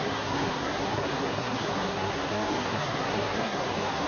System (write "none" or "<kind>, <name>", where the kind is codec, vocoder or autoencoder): codec, SNAC